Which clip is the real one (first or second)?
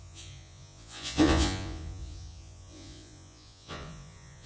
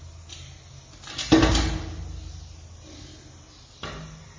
second